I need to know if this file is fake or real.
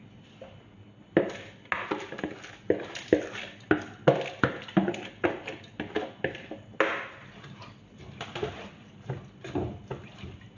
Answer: real